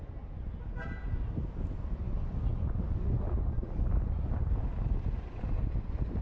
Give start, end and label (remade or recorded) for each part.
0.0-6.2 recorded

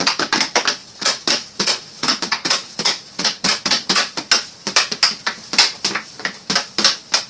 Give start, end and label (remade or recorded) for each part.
0.0-0.8 recorded; 0.8-4.3 remade; 4.3-7.3 recorded